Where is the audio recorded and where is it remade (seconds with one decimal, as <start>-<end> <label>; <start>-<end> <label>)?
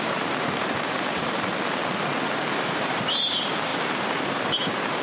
0.0-1.5 remade; 1.5-2.5 recorded; 2.5-5.0 remade